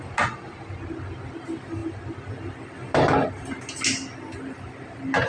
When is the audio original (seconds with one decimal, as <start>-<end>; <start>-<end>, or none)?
0.0-5.3